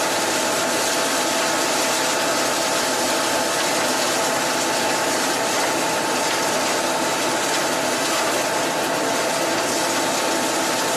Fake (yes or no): no